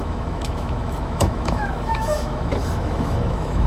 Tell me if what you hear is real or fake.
fake